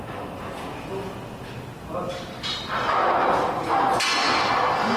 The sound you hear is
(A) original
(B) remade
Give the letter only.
A